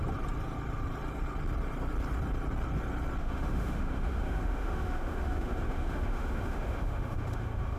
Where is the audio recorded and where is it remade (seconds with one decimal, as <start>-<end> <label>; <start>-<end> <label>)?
0.0-3.2 recorded; 3.2-7.8 remade

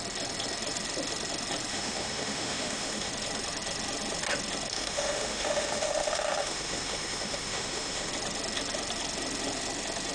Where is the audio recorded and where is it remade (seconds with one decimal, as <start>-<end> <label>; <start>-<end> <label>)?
0.0-1.7 recorded; 1.7-3.1 remade; 3.1-4.7 recorded; 4.7-8.1 remade; 8.1-10.1 recorded

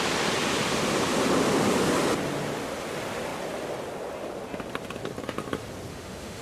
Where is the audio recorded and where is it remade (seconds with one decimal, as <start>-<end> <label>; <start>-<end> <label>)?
0.0-5.9 recorded; 5.9-6.4 remade

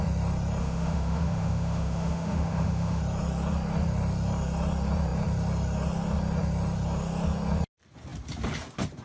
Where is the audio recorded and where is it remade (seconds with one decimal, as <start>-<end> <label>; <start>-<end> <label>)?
0.0-0.6 recorded; 0.6-3.0 remade; 3.0-9.0 recorded

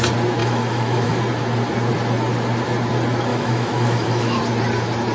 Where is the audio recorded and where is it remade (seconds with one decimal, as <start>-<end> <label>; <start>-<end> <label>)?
0.0-0.4 recorded; 0.4-1.2 remade; 1.2-3.3 recorded; 3.3-4.4 remade; 4.4-5.1 recorded